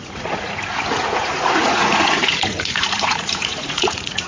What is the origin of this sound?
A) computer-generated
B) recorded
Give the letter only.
A